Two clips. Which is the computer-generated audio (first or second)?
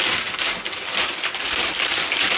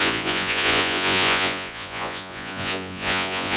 second